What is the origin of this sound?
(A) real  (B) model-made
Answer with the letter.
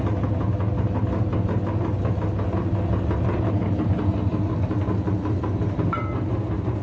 A